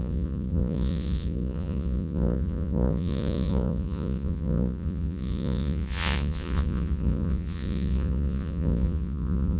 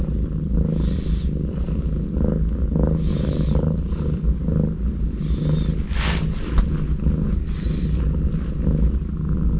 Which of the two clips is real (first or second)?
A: second